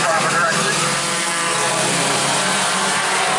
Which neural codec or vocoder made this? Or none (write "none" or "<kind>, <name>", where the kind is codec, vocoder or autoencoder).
vocoder, BigVGAN v2